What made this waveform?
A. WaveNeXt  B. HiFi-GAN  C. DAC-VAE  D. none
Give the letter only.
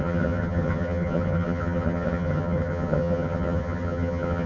B